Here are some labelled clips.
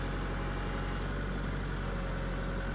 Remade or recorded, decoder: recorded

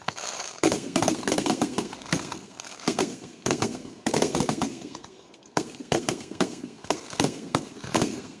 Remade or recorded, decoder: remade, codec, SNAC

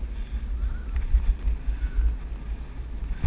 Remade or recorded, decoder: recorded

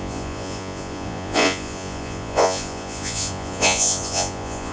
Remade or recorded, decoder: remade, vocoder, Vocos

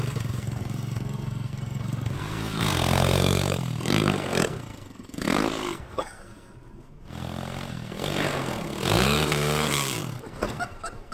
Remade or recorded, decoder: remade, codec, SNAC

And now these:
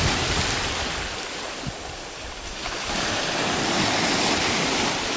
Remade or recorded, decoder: remade, vocoder, BigVGAN v2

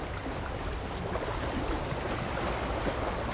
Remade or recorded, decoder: recorded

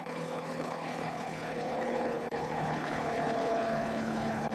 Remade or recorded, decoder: remade, codec, HILCodec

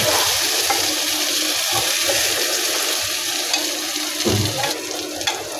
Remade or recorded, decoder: recorded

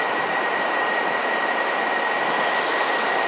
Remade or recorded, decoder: recorded